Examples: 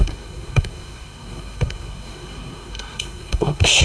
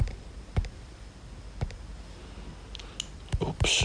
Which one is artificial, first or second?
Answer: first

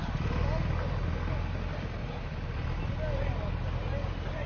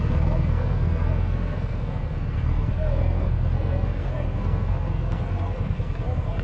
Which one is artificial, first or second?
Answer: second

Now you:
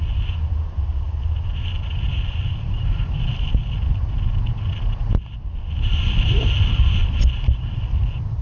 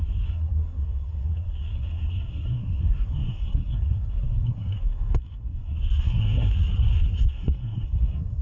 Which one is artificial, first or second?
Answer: second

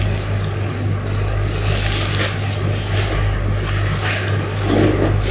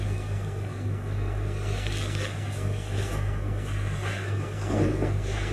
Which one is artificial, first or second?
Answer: second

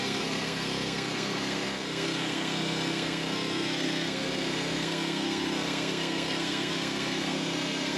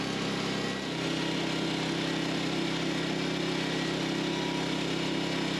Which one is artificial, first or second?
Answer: first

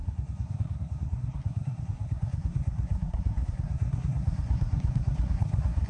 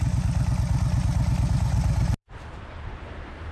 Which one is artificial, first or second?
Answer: first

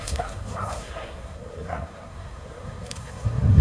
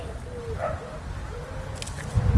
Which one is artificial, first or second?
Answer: first